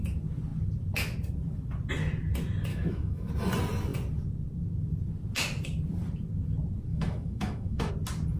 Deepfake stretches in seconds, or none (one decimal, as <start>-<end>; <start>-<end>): 2.7-3.3; 6.9-7.9